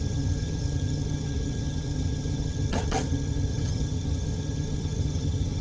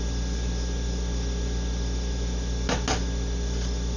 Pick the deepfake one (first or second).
first